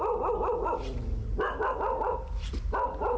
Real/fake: real